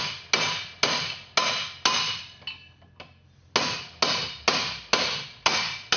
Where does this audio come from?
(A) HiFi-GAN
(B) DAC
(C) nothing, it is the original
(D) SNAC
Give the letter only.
C